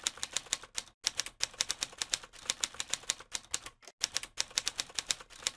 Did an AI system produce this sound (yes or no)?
no